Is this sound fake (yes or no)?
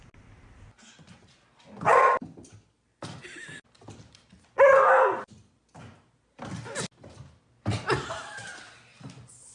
no